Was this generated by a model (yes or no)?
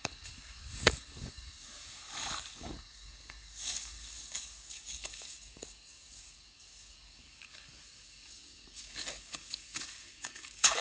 yes